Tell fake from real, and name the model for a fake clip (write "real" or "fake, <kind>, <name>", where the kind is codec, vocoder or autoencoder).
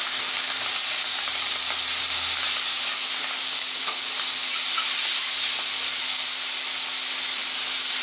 real